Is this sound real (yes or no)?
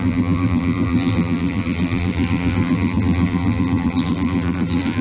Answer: no